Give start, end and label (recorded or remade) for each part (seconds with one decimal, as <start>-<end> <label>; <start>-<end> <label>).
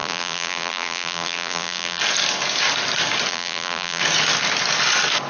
0.0-2.0 remade; 2.0-3.3 recorded; 3.3-4.0 remade; 4.0-5.3 recorded